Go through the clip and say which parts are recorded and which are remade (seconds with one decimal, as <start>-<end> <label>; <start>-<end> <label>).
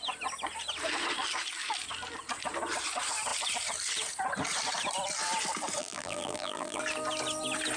0.0-5.8 recorded; 5.8-6.8 remade; 6.8-7.8 recorded